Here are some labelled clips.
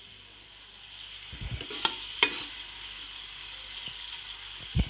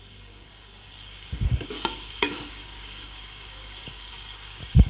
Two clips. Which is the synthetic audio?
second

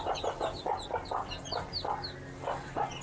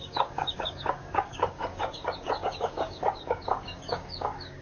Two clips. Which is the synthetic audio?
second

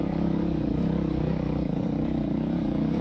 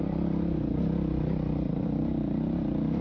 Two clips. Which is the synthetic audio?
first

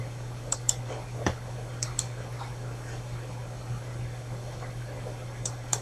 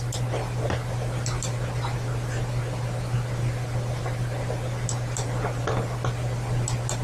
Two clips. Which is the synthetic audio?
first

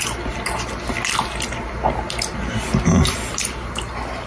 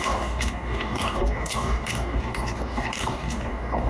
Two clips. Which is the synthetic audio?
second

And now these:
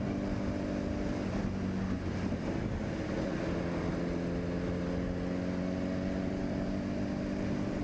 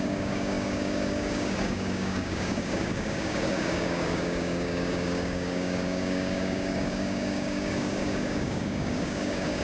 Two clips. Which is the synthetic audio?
second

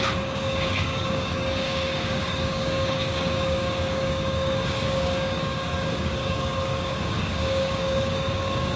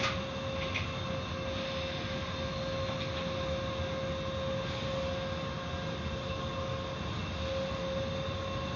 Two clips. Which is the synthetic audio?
first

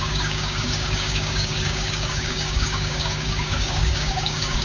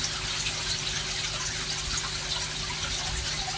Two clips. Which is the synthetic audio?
first